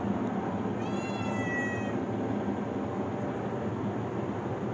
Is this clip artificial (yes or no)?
no